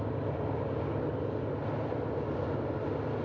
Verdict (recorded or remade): recorded